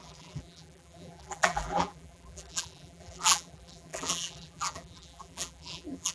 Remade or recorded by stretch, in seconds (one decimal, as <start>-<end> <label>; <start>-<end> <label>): 0.0-6.1 remade